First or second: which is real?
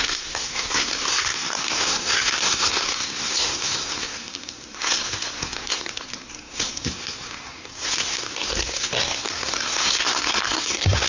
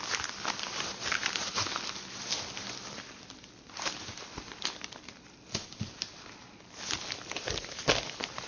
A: second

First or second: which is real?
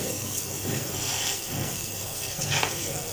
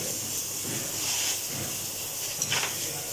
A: second